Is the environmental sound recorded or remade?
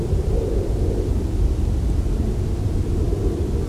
remade